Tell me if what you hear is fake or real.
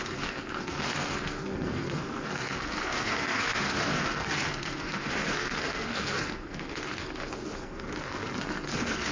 fake